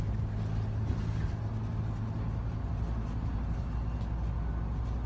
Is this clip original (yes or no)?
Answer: yes